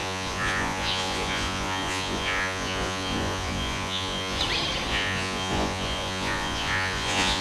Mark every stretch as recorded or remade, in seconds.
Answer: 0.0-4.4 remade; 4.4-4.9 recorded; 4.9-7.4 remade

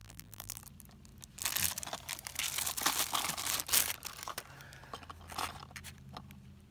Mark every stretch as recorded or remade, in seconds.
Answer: 0.0-0.6 remade; 0.6-6.7 recorded